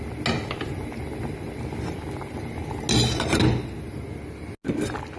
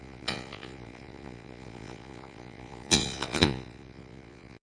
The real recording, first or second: first